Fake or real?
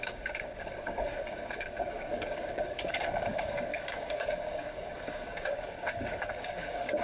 fake